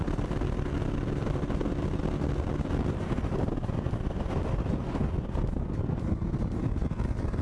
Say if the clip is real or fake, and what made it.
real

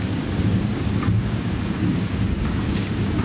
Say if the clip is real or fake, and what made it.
fake, codec, DAC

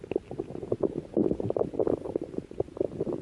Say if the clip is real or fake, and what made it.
real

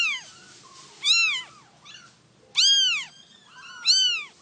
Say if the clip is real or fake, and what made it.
real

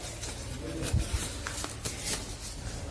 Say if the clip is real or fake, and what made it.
real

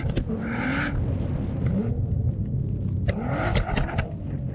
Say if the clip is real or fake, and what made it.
real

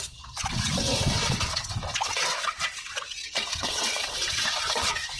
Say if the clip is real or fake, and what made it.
fake, vocoder, WaveNeXt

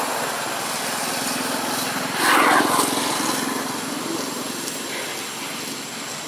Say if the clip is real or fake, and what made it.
real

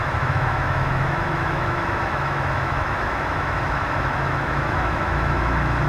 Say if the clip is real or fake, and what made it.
fake, autoencoder, DAC-VAE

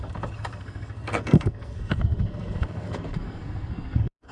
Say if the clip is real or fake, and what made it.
fake, codec, SNAC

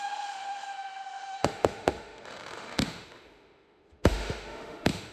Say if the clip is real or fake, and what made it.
fake, autoencoder, DAC-VAE